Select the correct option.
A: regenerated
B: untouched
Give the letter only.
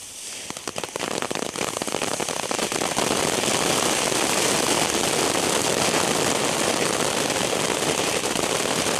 A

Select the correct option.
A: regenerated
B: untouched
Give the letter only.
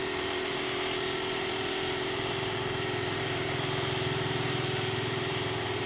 A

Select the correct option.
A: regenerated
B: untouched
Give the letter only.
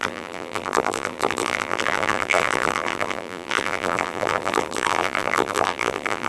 A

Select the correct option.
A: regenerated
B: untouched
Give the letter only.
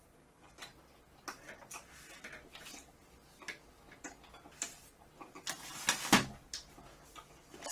B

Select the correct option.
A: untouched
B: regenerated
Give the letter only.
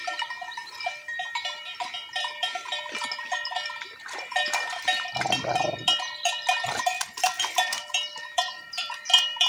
B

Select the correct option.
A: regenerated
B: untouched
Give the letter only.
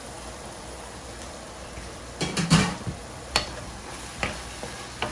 A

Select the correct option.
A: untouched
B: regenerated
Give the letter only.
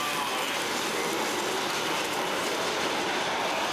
B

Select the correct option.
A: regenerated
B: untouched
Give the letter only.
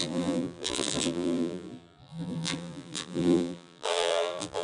A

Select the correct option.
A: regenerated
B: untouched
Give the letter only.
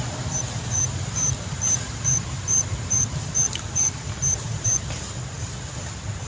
A